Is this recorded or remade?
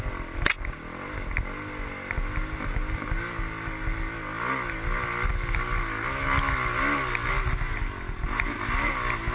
recorded